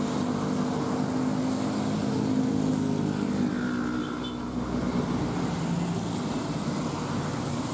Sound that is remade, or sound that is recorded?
recorded